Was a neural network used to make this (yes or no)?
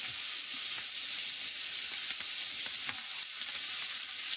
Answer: no